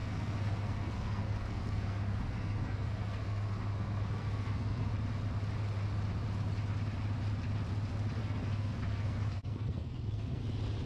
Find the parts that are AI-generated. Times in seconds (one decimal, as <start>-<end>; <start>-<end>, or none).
0.0-4.9; 8.2-10.4